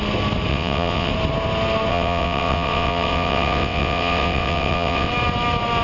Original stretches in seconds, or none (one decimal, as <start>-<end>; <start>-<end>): 0.0-0.5; 1.1-1.9; 5.1-5.8